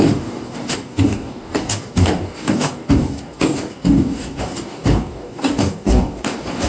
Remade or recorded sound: remade